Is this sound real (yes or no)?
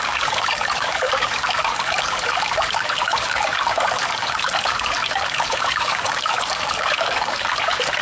no